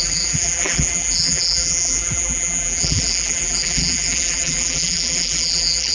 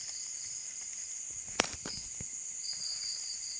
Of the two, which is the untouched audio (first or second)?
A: second